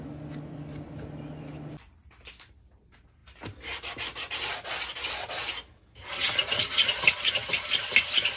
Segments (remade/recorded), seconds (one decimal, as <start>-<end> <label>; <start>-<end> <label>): 0.0-8.4 recorded